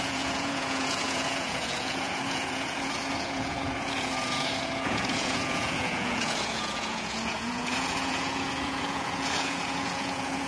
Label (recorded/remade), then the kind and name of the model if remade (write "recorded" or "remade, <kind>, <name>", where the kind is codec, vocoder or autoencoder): remade, vocoder, Vocos